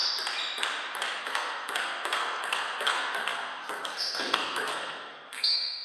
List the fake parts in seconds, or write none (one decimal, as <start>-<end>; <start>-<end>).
1.2-5.8